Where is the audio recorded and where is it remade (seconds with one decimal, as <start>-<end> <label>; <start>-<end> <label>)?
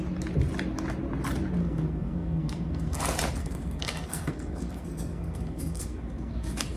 0.0-1.6 recorded; 1.6-3.0 remade; 3.0-3.4 recorded; 3.4-6.8 remade